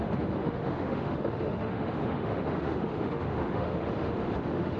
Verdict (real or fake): fake